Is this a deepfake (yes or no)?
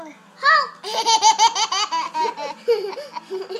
no